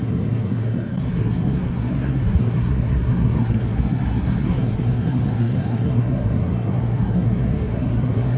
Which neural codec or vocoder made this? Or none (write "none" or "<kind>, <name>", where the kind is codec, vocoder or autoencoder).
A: codec, SNAC